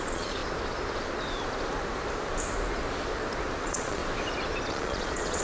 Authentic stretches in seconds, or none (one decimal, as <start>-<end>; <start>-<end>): 0.4-3.6; 4.0-4.7

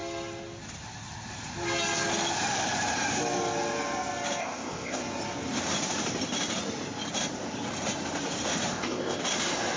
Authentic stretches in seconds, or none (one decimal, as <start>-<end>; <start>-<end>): 0.0-4.4; 5.0-8.7; 9.2-9.8

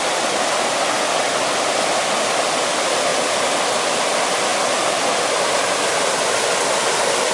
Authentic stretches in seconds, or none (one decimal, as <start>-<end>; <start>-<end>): 0.0-7.3